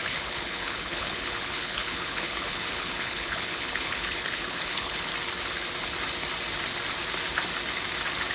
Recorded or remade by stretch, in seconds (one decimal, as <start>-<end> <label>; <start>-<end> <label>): 0.0-5.1 remade; 5.1-8.3 recorded

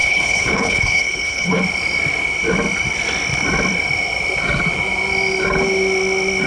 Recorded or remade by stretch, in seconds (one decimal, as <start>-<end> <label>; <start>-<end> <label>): 0.0-1.6 remade; 1.6-6.5 recorded

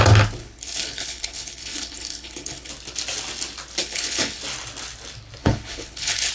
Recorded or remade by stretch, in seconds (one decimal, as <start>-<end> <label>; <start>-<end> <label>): 0.0-0.4 recorded; 0.4-2.7 remade; 2.7-3.8 recorded; 3.8-4.4 remade; 4.4-5.4 recorded; 5.4-6.3 remade

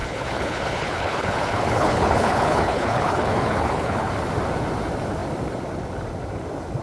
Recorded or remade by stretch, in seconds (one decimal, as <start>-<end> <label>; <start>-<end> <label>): 0.0-4.1 remade; 4.1-6.8 recorded

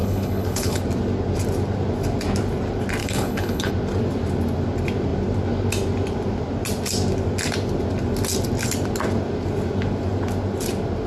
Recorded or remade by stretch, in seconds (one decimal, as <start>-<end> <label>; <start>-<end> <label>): 0.0-0.8 remade; 0.8-3.0 recorded; 3.0-3.7 remade; 3.7-11.1 recorded

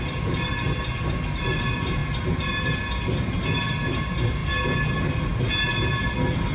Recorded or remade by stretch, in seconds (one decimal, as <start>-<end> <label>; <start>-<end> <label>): 0.0-6.5 recorded

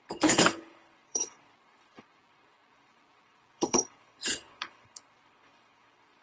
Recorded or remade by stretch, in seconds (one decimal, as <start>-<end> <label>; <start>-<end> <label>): 0.0-6.2 remade